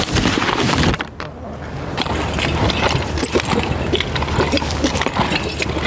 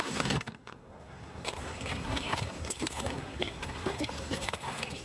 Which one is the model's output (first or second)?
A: second